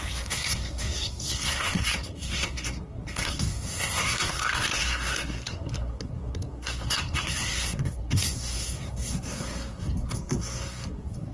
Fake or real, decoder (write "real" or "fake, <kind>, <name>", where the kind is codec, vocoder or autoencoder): fake, codec, SNAC